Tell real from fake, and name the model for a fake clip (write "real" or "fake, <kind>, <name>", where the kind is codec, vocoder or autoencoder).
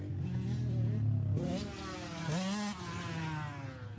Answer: real